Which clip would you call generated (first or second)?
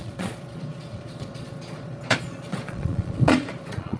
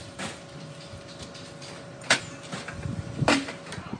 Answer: first